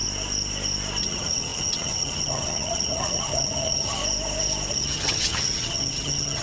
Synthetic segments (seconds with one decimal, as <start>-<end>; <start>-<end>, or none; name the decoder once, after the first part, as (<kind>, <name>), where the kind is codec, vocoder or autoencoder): 1.0-4.0 (vocoder, HiFi-GAN); 4.7-6.4